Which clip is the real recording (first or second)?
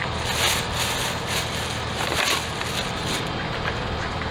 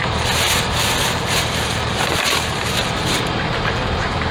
first